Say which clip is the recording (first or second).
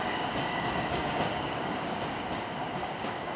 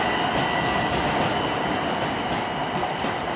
second